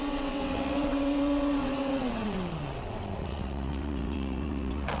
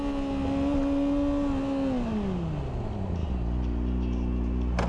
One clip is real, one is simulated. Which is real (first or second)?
second